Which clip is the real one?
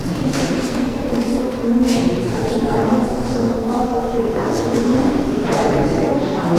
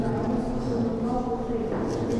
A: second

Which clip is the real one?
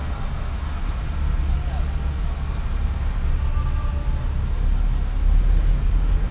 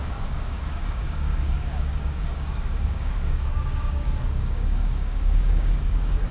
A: first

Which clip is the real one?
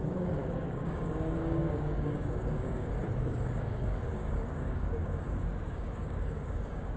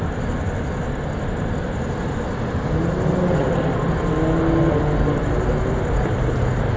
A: second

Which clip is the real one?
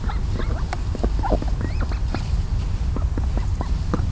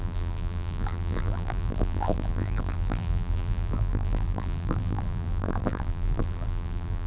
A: first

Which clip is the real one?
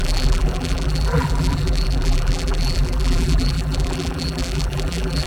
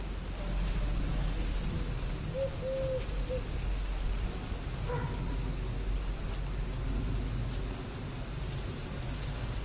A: second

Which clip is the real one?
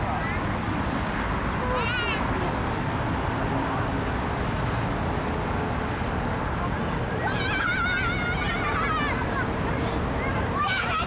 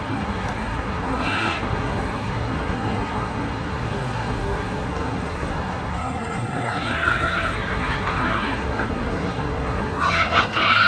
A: first